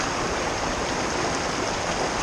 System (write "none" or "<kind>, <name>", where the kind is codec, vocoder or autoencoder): none